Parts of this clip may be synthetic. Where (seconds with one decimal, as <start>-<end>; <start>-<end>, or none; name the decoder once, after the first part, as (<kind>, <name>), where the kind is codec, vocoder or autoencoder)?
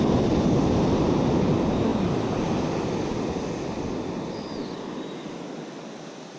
none